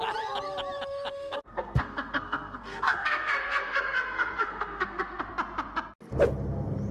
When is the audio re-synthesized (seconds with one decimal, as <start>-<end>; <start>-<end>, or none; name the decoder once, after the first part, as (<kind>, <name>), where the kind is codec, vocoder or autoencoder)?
1.1-5.2 (codec, SNAC)